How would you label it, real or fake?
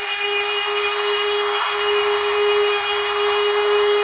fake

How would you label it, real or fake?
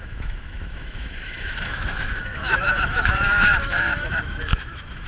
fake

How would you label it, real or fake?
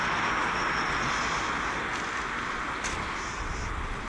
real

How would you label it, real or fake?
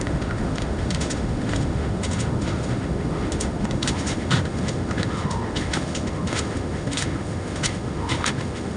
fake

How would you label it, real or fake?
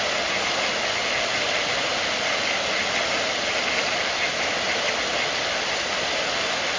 real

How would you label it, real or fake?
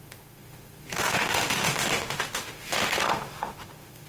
fake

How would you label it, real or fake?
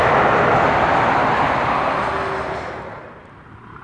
real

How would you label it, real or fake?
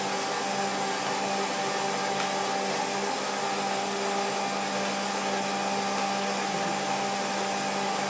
real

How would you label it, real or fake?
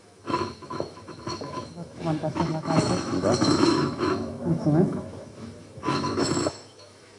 fake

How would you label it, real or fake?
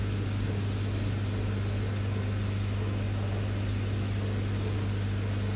real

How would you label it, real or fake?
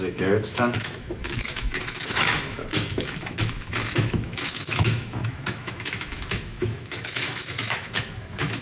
fake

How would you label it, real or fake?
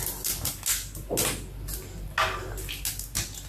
real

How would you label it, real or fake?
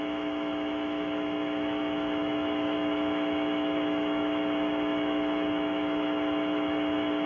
fake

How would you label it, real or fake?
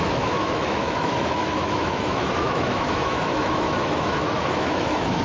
fake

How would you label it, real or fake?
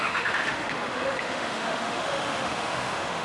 fake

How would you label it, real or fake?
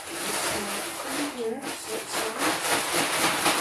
real